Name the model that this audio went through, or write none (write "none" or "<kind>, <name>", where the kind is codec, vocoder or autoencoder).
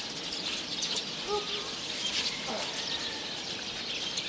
none